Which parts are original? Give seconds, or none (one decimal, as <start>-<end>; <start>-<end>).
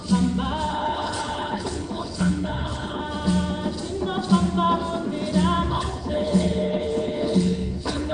0.0-0.7; 3.0-5.7